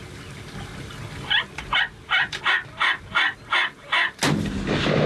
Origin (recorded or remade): recorded